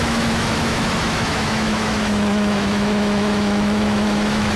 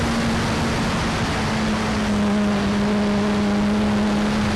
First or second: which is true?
second